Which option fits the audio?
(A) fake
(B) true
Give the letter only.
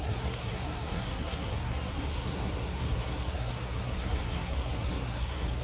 A